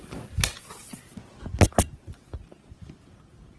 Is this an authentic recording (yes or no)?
yes